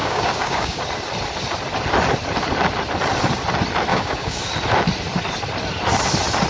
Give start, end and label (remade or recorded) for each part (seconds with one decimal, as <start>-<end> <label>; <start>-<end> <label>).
0.0-0.8 remade; 0.8-3.9 recorded; 3.9-4.5 remade; 4.5-6.5 recorded